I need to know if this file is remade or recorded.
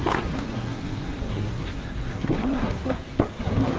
remade